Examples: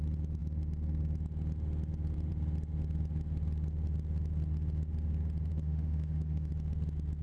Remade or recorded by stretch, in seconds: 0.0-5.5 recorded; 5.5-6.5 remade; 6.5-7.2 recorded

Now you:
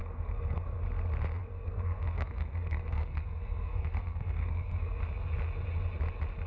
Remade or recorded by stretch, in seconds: 0.0-0.8 remade; 0.8-1.4 recorded; 1.4-5.0 remade; 5.0-6.5 recorded

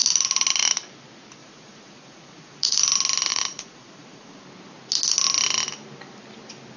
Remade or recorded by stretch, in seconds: 0.0-1.4 recorded; 1.4-2.8 remade; 2.8-3.3 recorded; 3.3-4.4 remade; 4.4-6.8 recorded

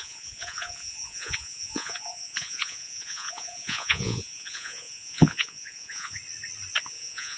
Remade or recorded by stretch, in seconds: 0.0-6.2 remade; 6.2-6.8 recorded; 6.8-7.4 remade

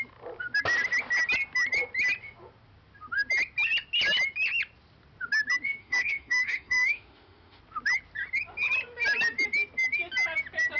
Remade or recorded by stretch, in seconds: 0.0-5.8 recorded; 5.8-7.6 remade; 7.6-10.8 recorded

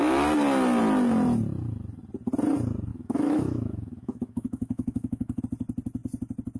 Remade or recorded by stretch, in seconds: 0.0-2.9 recorded; 2.9-5.4 remade; 5.4-6.6 recorded